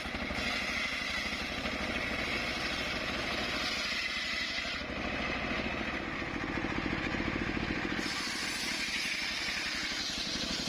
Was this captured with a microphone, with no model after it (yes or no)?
yes